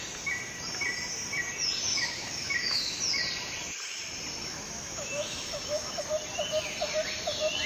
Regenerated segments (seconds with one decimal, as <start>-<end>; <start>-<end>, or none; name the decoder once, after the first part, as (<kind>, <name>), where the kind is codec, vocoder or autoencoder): 1.9-3.0 (autoencoder, DAC-VAE); 4.4-6.0